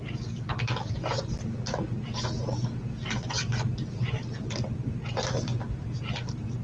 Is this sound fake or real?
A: real